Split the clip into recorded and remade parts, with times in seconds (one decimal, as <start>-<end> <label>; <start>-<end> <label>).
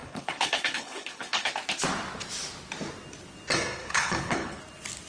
0.0-1.5 remade; 1.5-3.8 recorded; 3.8-4.6 remade; 4.6-5.1 recorded